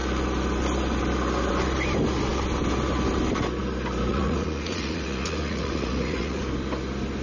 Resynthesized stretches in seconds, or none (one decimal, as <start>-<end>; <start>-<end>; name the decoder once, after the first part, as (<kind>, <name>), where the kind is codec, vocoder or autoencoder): 4.1-6.4 (vocoder, Vocos)